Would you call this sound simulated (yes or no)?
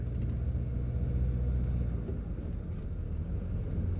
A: no